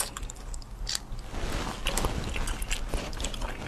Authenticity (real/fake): real